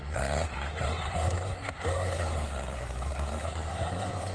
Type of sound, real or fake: fake